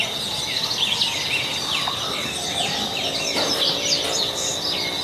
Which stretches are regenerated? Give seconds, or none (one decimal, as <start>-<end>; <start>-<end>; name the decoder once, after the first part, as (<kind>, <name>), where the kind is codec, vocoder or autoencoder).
none